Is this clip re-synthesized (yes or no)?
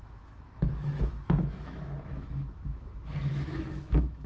yes